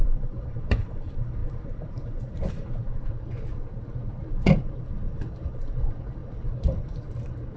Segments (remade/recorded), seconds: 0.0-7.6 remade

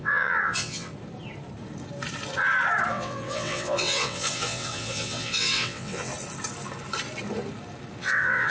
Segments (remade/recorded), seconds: 0.0-0.9 remade; 0.9-2.9 recorded; 2.9-6.1 remade; 6.1-8.0 recorded; 8.0-8.5 remade

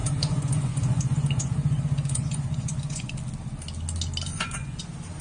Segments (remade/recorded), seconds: 0.0-3.1 remade; 3.1-4.3 recorded; 4.3-4.8 remade; 4.8-5.2 recorded

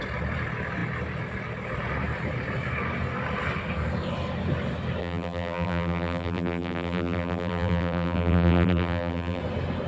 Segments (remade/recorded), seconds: 0.0-5.0 recorded; 5.0-9.4 remade; 9.4-9.9 recorded

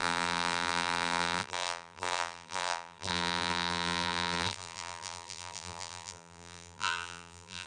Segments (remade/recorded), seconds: 0.0-7.7 remade

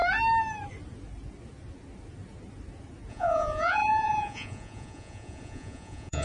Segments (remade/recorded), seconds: 0.0-3.1 recorded; 3.1-6.2 remade

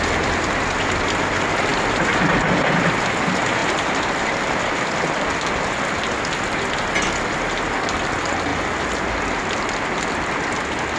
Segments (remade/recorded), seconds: 0.0-11.0 recorded